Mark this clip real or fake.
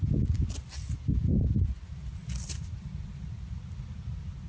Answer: real